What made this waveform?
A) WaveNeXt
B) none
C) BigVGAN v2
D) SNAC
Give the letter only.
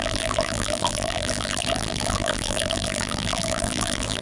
C